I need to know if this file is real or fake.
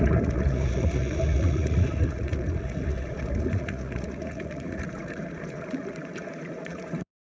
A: fake